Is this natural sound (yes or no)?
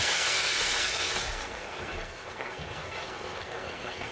no